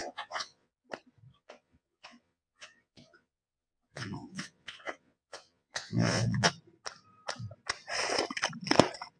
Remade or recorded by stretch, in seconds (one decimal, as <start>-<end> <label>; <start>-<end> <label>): 0.0-0.7 remade; 0.7-1.3 recorded; 1.3-6.5 remade; 6.5-9.2 recorded